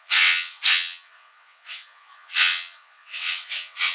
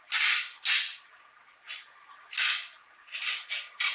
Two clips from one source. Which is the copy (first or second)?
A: first